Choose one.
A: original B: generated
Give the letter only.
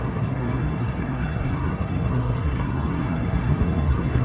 B